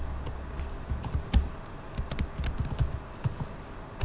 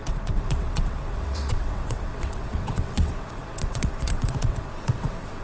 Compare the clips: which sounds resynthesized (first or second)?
second